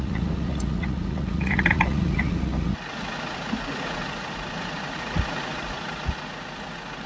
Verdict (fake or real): fake